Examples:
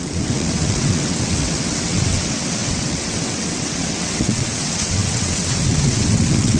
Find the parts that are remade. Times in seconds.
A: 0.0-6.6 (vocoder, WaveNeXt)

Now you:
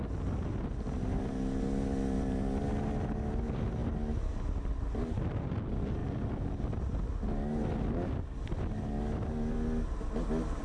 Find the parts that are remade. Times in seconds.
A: none

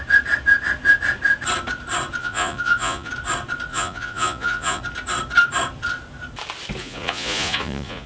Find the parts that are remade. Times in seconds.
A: 2.2-3.1 (vocoder, Vocos); 3.7-4.8; 6.8-8.1

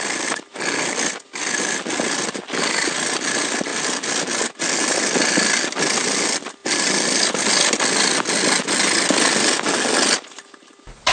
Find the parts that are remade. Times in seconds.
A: none

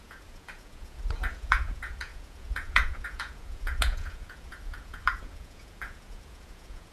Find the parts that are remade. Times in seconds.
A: 0.0-6.9 (vocoder, Vocos)

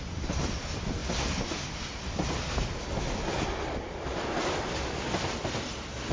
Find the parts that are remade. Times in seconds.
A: none

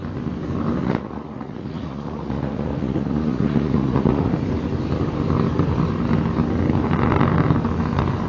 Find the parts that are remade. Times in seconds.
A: 0.8-4.3 (vocoder, Vocos)

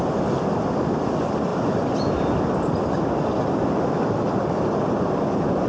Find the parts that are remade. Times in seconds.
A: none